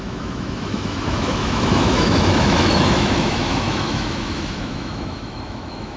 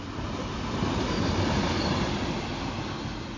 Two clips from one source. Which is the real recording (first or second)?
second